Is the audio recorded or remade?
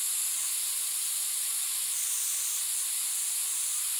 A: recorded